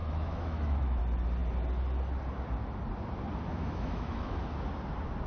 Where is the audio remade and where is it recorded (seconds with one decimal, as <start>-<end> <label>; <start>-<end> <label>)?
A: 0.0-1.0 remade; 1.0-3.5 recorded; 3.5-4.4 remade; 4.4-5.3 recorded